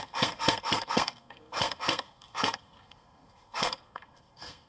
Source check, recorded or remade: remade